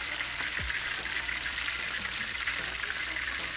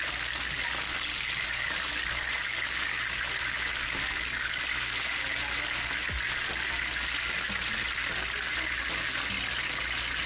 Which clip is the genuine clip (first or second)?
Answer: second